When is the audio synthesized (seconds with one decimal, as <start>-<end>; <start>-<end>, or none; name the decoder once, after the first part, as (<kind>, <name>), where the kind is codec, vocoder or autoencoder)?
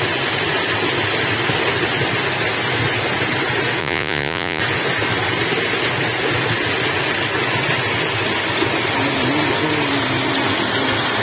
3.8-4.6 (vocoder, Vocos)